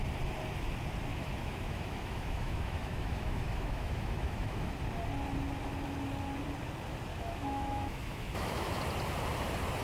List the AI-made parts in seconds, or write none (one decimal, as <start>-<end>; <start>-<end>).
1.1-4.7; 7.1-8.8